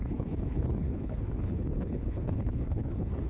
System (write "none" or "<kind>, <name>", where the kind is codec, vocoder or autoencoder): codec, HILCodec